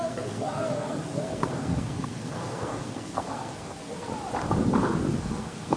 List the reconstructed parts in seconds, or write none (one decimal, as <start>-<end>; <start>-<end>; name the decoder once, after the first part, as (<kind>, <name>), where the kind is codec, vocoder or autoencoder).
0.0-4.1 (codec, SNAC); 5.2-5.8